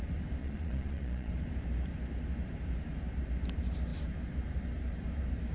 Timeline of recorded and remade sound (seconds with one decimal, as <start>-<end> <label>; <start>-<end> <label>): 0.0-0.4 recorded; 0.4-1.3 remade; 1.3-5.5 recorded